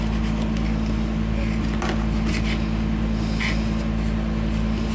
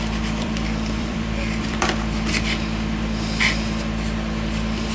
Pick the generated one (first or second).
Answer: second